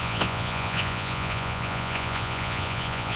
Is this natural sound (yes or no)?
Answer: no